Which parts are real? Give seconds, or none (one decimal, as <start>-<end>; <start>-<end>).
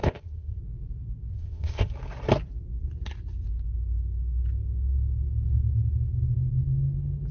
0.6-1.3; 1.9-7.3